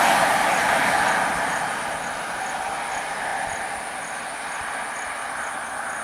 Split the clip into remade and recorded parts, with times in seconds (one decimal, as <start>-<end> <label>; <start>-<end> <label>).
0.0-6.0 recorded